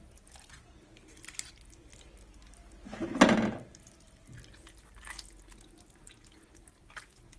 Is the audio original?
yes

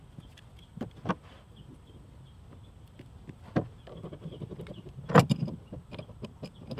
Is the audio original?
yes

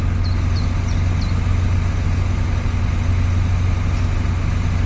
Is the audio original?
yes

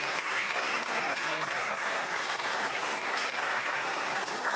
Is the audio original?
no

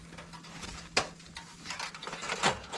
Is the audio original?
yes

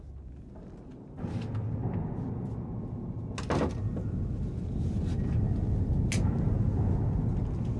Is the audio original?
yes